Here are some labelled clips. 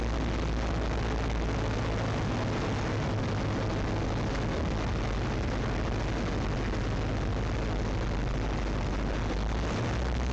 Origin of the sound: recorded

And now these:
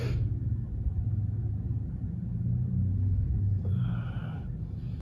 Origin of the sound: recorded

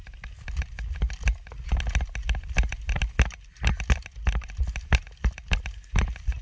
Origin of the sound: recorded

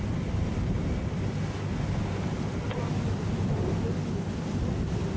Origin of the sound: recorded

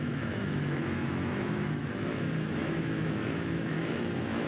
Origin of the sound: remade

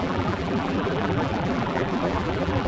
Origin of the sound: remade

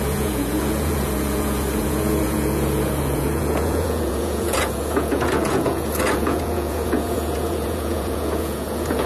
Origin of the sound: remade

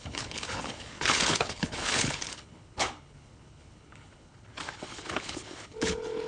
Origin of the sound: remade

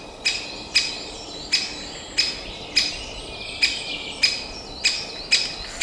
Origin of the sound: recorded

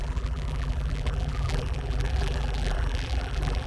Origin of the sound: remade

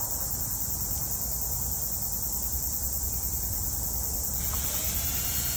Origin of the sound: recorded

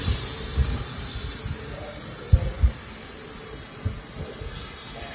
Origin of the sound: recorded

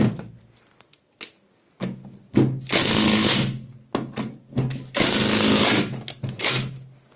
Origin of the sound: recorded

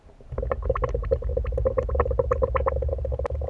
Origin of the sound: recorded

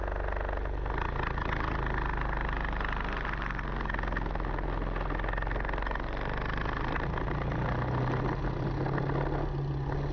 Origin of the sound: recorded